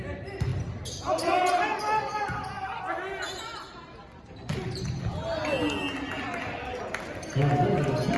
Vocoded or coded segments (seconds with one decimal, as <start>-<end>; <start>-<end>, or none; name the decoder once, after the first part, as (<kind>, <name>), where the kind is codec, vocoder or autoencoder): none